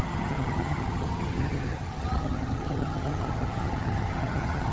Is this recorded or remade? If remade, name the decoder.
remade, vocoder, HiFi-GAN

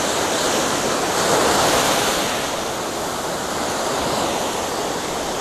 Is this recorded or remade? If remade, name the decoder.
recorded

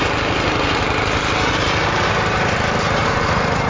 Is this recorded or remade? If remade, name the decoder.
recorded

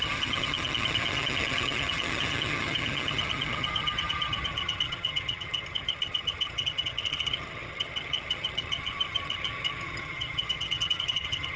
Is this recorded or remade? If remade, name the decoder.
remade, vocoder, HiFi-GAN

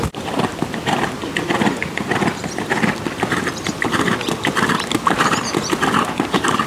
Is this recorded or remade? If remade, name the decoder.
remade, vocoder, BigVGAN v2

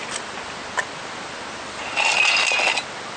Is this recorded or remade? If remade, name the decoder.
recorded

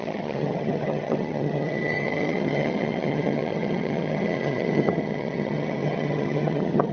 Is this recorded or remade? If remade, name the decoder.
remade, vocoder, HiFi-GAN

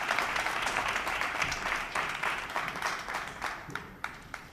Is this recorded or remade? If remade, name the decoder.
remade, vocoder, BigVGAN v2